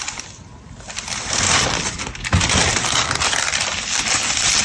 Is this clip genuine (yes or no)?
yes